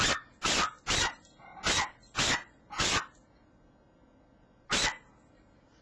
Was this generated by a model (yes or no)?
no